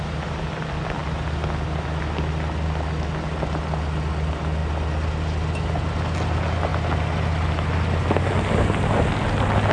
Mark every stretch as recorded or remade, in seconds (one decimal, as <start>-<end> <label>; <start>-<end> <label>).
0.0-9.7 recorded